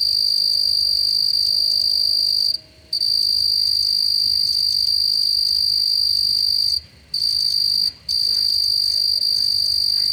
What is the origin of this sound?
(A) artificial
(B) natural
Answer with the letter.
B